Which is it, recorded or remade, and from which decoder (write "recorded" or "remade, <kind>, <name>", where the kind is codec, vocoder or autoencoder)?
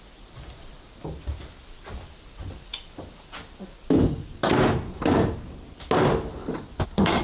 recorded